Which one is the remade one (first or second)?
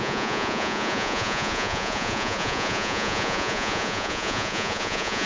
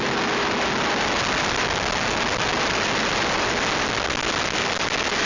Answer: first